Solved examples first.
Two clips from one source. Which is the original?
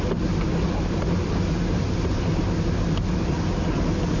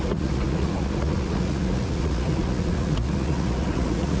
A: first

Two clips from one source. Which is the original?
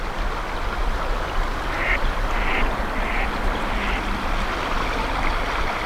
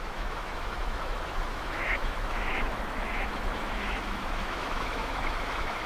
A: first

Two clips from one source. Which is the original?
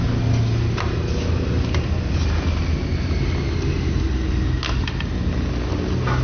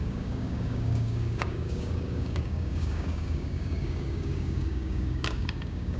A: first